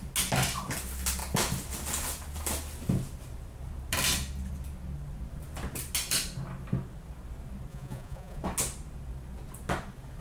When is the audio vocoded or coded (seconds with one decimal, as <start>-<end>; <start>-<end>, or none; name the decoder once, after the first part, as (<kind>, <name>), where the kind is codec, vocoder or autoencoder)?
7.7-8.4 (vocoder, Vocos)